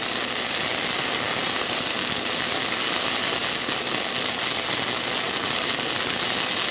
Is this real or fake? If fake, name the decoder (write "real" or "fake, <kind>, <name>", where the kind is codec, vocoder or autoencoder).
real